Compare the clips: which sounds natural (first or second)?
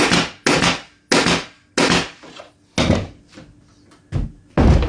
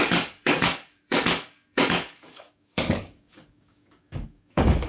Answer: first